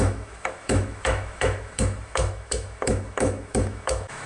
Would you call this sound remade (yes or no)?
yes